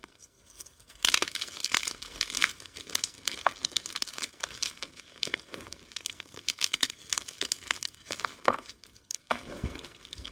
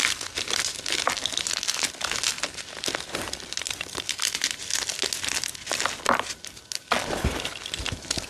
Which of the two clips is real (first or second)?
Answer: second